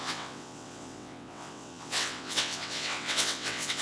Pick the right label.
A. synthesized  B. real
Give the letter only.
A